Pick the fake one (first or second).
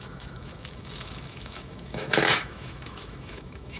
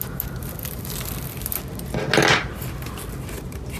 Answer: first